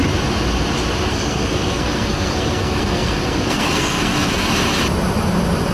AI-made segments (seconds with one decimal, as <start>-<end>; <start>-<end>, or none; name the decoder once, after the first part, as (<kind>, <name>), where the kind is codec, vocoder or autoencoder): 1.1-4.5 (codec, SNAC)